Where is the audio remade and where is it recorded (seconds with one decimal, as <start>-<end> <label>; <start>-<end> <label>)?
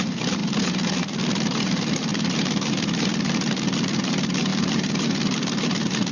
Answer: 0.0-6.1 remade